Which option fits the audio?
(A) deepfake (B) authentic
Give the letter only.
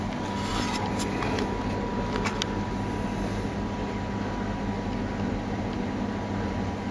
B